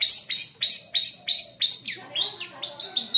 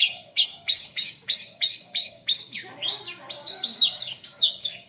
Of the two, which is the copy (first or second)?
second